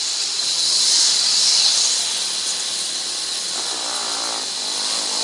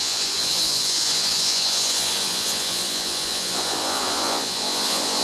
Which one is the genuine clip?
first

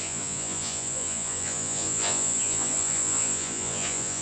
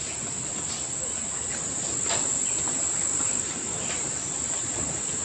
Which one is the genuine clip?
second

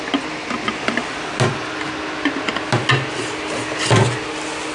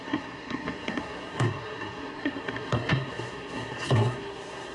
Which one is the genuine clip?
first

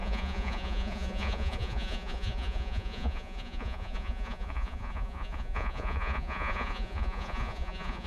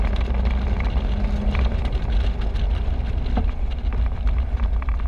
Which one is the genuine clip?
second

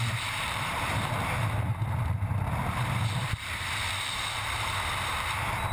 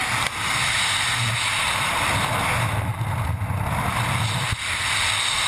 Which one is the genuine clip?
second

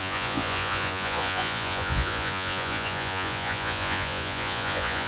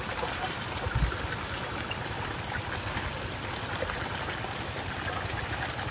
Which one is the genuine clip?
second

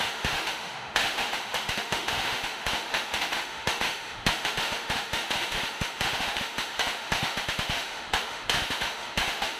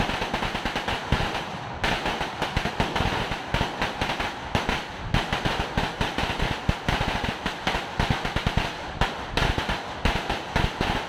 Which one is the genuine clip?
second